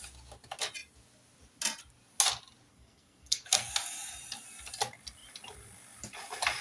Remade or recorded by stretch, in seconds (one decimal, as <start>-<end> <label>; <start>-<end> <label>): 0.0-2.7 recorded; 2.7-3.7 remade; 3.7-6.6 recorded